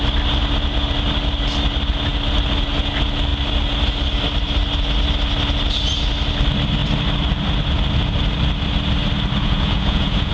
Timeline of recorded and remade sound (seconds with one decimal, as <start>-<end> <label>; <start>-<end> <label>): 0.0-9.4 recorded; 9.4-10.3 remade